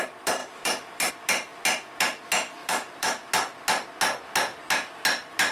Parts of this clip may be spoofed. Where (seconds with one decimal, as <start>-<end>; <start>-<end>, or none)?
0.4-1.1; 2.6-3.3